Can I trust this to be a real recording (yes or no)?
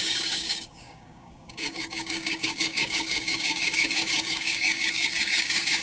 no